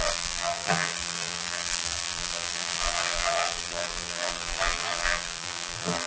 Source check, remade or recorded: remade